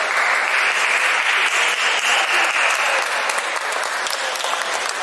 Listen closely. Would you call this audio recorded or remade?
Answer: recorded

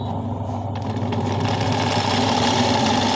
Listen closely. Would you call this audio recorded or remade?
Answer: recorded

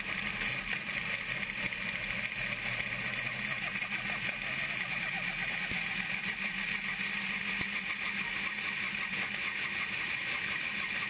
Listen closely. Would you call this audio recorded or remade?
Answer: recorded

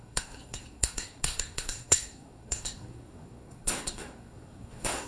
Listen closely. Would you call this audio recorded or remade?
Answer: remade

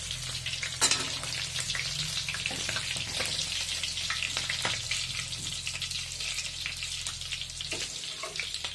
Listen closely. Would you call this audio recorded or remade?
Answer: recorded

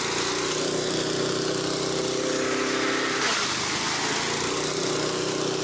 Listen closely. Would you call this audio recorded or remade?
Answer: recorded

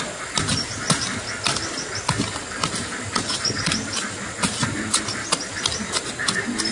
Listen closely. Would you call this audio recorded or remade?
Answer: recorded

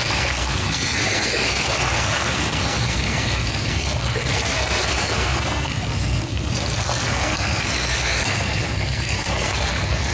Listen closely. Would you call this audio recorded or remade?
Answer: remade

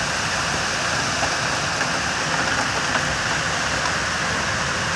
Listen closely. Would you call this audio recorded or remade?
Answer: recorded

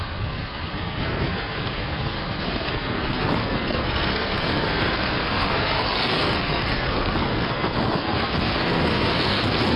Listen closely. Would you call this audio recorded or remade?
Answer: remade